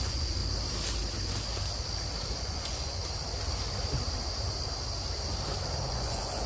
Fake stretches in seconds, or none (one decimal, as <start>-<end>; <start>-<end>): 0.0-0.4; 2.4-3.0; 5.9-6.5